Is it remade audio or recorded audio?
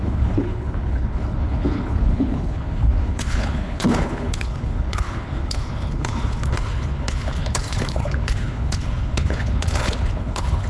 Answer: remade